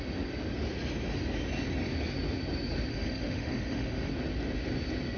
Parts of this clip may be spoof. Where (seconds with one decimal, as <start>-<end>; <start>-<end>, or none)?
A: 2.9-4.1

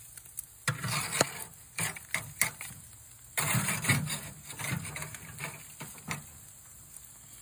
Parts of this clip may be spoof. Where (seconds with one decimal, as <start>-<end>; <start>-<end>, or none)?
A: none

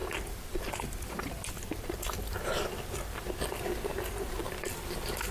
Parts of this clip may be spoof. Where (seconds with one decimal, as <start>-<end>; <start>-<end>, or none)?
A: 0.0-3.2; 4.4-5.3

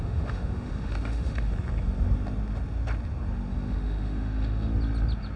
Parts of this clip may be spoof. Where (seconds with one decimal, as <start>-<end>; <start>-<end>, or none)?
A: 0.0-1.5; 3.6-4.7